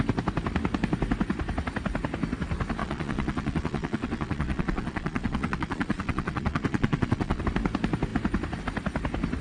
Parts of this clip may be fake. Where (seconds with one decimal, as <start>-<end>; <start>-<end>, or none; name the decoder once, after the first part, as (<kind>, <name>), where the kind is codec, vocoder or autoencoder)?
2.8-7.4 (vocoder, Vocos)